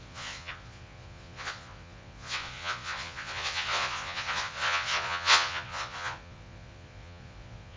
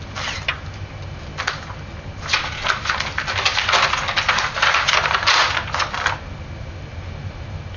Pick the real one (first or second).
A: second